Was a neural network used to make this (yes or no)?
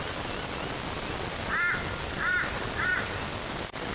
no